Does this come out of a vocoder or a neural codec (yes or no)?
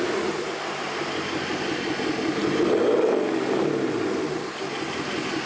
no